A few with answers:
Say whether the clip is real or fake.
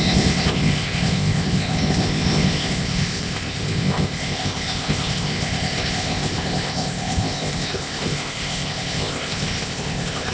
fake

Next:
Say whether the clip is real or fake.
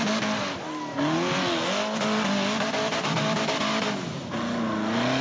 real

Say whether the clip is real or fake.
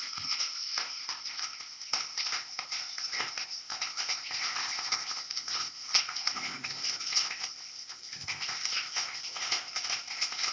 fake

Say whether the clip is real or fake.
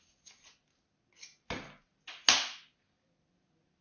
real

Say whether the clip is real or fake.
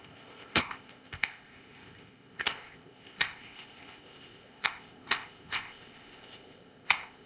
fake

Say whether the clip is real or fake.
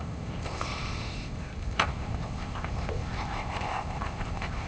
fake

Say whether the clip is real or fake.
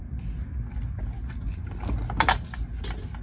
real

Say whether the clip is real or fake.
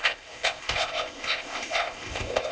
fake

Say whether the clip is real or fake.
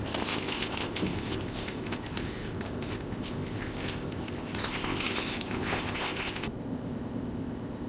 fake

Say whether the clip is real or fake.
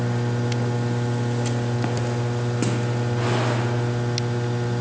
real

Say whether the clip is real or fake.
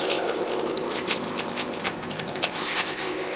fake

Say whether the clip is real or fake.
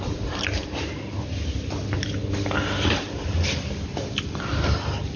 real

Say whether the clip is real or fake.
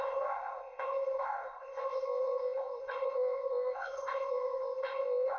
fake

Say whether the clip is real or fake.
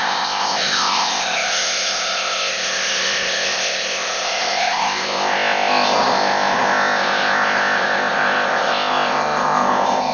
fake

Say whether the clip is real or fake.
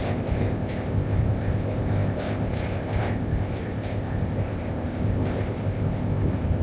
fake